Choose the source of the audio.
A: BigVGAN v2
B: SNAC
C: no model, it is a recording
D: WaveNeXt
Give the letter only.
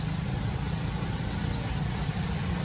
C